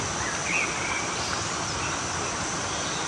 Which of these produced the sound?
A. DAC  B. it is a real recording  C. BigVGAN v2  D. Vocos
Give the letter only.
B